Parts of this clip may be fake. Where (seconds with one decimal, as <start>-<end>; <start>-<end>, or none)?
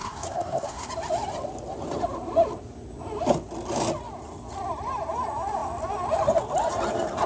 0.0-0.9